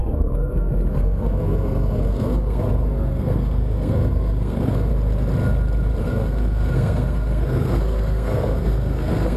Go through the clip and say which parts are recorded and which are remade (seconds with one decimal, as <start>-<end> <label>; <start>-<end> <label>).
0.0-4.9 remade; 4.9-6.0 recorded; 6.0-9.4 remade